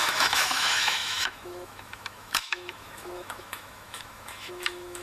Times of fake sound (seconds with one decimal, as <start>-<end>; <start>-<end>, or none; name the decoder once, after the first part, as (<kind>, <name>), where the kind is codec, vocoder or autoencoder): 0.0-5.0 (autoencoder, DAC-VAE)